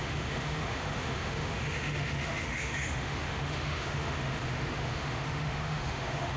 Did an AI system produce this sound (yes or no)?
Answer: yes